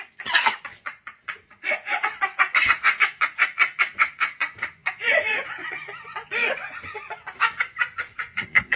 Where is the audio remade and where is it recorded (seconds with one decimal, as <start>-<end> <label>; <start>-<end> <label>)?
0.0-8.8 remade